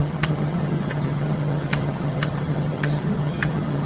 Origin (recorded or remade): remade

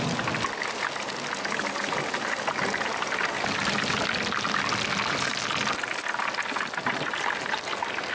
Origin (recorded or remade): recorded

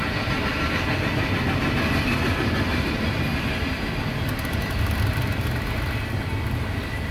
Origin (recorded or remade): recorded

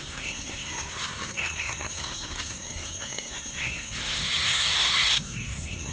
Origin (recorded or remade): remade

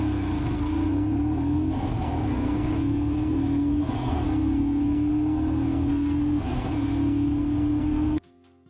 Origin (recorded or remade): remade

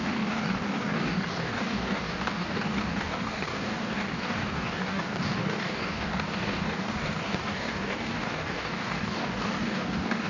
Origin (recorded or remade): remade